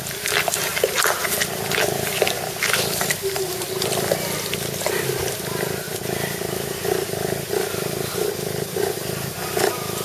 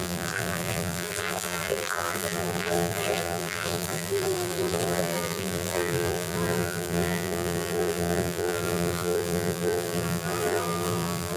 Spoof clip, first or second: second